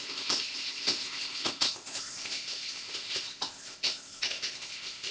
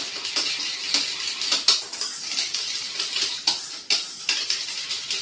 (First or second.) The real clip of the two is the second